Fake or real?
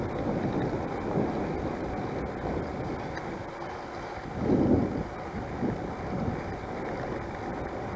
real